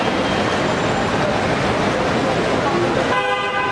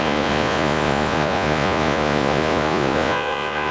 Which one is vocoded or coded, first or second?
second